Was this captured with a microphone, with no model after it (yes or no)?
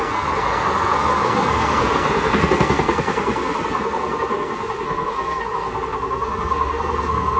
no